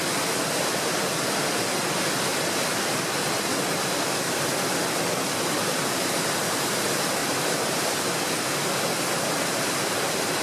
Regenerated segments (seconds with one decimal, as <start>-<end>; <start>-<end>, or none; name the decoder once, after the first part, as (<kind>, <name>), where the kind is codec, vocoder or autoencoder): 5.6-6.8 (vocoder, BigVGAN v2); 7.2-8.1